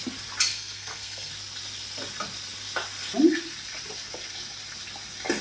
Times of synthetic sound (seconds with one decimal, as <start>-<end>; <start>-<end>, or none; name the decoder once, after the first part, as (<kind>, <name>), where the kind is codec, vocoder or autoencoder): 0.5-1.3 (codec, SNAC)